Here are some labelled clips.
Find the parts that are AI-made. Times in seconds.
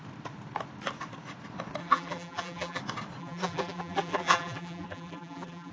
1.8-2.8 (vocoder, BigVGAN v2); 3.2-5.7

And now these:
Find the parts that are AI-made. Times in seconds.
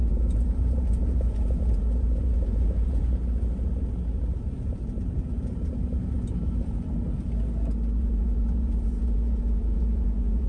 0.0-3.1 (vocoder, Vocos); 8.0-10.5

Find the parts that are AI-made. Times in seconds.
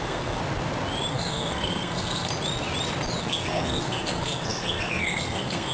0.0-0.4 (codec, SNAC); 1.1-2.3; 3.2-5.7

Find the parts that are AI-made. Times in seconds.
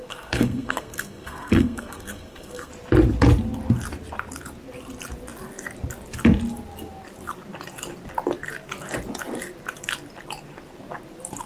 0.0-2.7 (codec, SNAC)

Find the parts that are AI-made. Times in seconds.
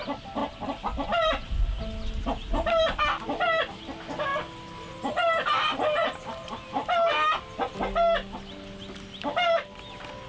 none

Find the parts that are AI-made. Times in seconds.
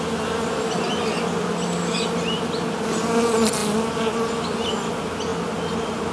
none